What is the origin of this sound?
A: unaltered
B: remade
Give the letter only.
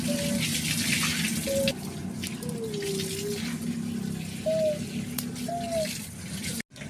A